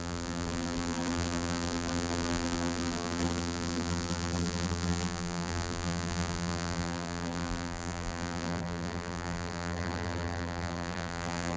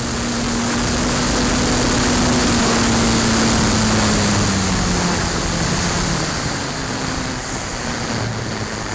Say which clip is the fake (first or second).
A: first